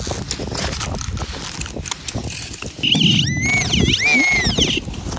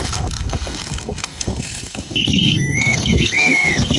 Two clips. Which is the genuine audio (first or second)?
first